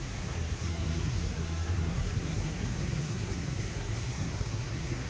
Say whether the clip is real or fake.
fake